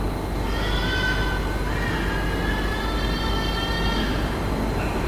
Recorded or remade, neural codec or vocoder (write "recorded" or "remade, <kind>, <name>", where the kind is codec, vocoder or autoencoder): recorded